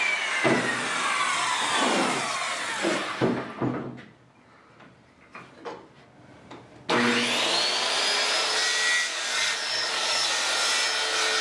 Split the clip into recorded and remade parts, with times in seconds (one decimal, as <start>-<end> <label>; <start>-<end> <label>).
0.0-9.1 recorded; 9.1-10.3 remade; 10.3-11.4 recorded